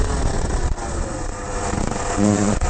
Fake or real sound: fake